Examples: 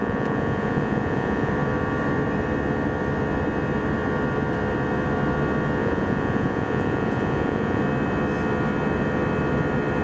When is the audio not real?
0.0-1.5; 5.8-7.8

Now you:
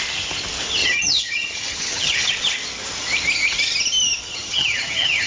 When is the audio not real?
0.8-2.3; 4.3-5.3